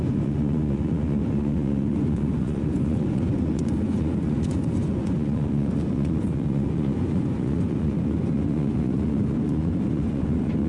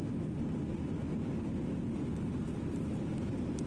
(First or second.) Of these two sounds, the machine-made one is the first